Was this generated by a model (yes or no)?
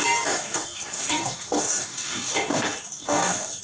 yes